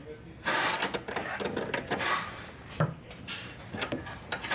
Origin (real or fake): real